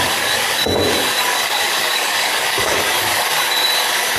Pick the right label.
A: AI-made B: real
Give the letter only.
A